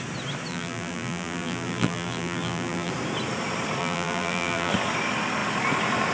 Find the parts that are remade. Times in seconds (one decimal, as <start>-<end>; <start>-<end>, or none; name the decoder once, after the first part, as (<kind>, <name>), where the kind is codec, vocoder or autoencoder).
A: 0.5-2.9 (vocoder, BigVGAN v2); 3.8-4.7